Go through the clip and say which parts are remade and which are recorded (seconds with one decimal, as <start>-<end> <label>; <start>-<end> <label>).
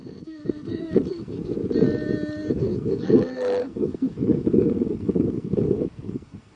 0.0-1.6 remade; 1.6-2.5 recorded; 2.5-6.6 remade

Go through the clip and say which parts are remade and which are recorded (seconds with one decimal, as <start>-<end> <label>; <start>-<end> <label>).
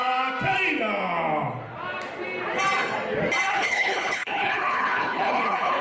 0.0-3.5 recorded; 3.5-5.8 remade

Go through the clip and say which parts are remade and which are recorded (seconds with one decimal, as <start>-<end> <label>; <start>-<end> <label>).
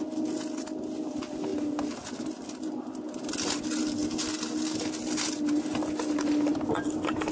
0.0-7.3 recorded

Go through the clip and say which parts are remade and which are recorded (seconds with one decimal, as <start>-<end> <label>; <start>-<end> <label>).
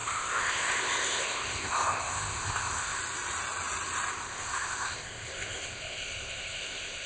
0.0-3.0 remade; 3.0-4.1 recorded; 4.1-7.1 remade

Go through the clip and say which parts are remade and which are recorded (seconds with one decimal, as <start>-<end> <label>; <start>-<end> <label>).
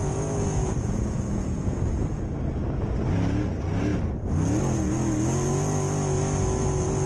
0.0-2.2 remade; 2.2-7.1 recorded